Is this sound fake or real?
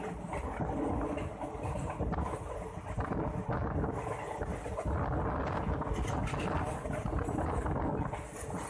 real